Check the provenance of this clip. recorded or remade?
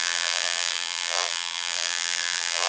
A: remade